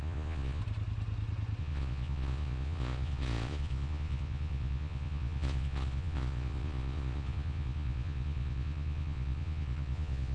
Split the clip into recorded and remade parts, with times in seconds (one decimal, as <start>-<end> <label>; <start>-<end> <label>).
0.0-0.6 remade; 0.6-1.6 recorded; 1.6-10.3 remade